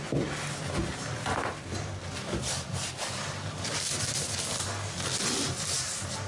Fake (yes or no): no